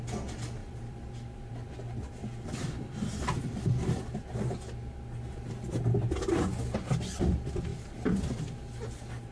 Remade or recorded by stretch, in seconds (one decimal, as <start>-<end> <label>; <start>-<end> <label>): 0.0-0.6 recorded; 0.6-1.5 remade; 1.5-2.2 recorded; 2.2-4.2 remade; 4.2-9.3 recorded

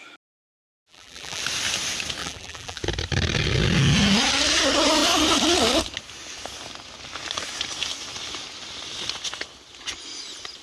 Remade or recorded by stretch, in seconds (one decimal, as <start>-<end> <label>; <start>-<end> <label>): 0.0-0.9 recorded; 0.9-1.4 remade; 1.4-2.2 recorded; 2.2-2.8 remade; 2.8-10.6 recorded

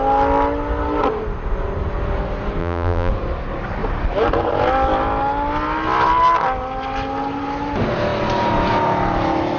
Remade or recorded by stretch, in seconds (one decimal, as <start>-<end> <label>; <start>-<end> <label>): 0.0-2.6 recorded; 2.6-3.1 remade; 3.1-9.6 recorded

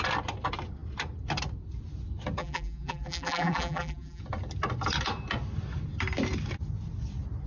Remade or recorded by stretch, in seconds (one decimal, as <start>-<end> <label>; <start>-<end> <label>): 0.0-2.4 recorded; 2.4-4.2 remade; 4.2-7.5 recorded

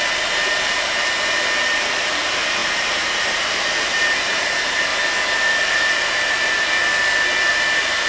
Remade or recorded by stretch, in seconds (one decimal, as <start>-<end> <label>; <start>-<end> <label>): 0.0-4.9 remade; 4.9-5.6 recorded; 5.6-6.8 remade; 6.8-7.5 recorded; 7.5-8.1 remade

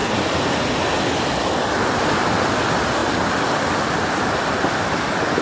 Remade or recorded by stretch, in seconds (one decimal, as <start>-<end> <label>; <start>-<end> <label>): 0.0-0.8 remade; 0.8-3.0 recorded; 3.0-5.4 remade